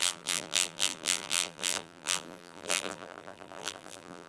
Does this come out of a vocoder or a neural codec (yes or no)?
yes